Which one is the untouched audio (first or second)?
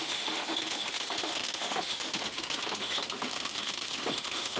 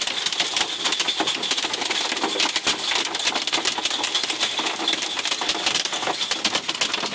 second